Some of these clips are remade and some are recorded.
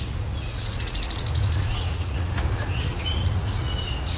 remade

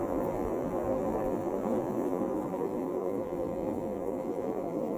remade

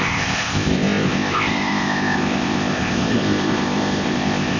remade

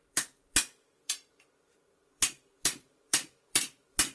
remade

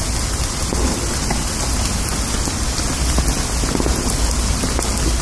recorded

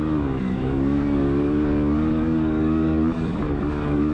remade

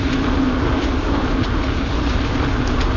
recorded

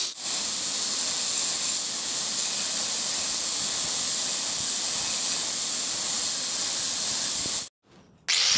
recorded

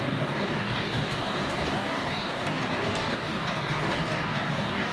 remade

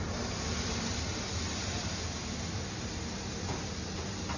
recorded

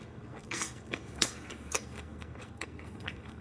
remade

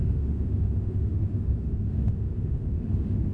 remade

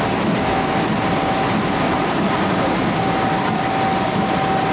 recorded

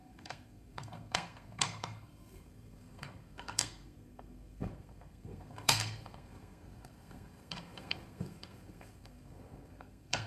remade